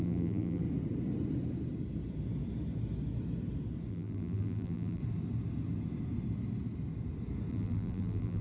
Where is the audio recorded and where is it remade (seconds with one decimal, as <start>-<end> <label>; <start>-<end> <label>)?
0.0-0.6 remade; 0.6-3.9 recorded; 3.9-5.0 remade; 5.0-7.5 recorded; 7.5-8.4 remade